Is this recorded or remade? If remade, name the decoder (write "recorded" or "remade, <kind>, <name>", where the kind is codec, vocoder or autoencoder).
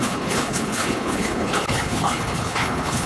remade, codec, HILCodec